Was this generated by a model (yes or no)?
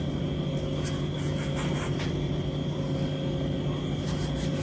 no